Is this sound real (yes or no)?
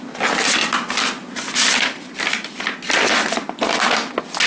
yes